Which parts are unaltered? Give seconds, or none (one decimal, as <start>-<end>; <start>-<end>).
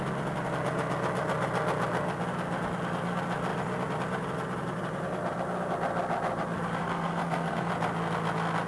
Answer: 0.0-6.8; 7.7-8.7